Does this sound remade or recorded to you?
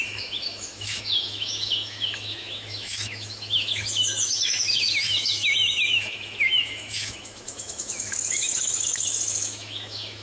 remade